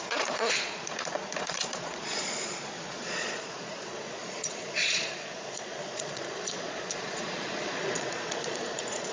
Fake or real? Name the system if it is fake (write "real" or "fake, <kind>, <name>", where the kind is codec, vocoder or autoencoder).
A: fake, vocoder, Vocos